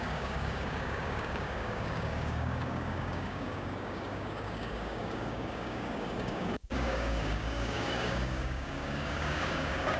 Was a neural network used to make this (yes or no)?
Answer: yes